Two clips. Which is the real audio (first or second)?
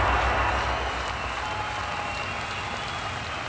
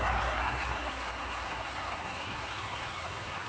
first